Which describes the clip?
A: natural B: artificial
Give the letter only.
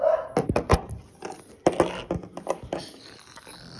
A